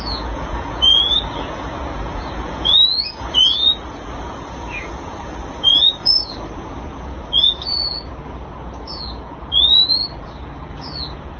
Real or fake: fake